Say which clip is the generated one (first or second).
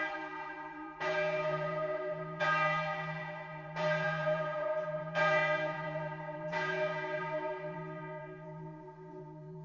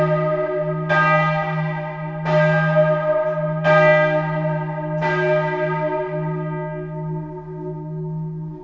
first